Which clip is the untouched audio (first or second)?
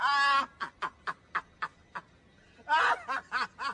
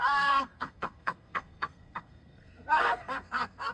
first